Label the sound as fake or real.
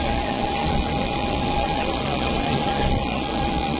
fake